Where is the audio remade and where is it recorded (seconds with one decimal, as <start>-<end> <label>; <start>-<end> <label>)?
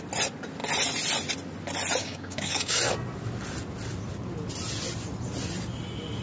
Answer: 0.0-2.0 recorded; 2.0-2.8 remade; 2.8-6.2 recorded